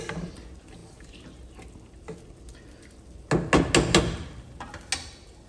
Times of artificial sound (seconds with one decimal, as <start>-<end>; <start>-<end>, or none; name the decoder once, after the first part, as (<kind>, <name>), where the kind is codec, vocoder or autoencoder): none